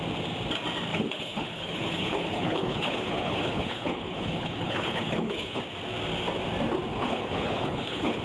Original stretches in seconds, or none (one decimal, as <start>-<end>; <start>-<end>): 0.0-0.9; 5.6-6.9